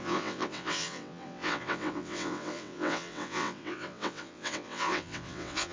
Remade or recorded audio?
remade